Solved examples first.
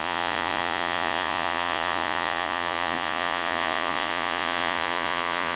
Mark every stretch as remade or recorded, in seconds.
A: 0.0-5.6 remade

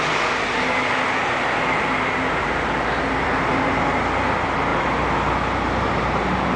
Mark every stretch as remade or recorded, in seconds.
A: 0.0-4.7 recorded; 4.7-6.6 remade

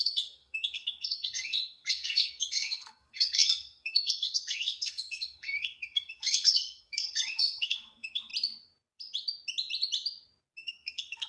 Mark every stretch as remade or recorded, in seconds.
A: 0.0-8.3 remade; 8.3-10.6 recorded; 10.6-11.3 remade